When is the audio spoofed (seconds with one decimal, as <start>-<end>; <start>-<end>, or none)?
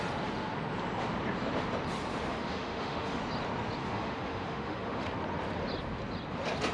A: 2.3-3.2; 3.8-5.1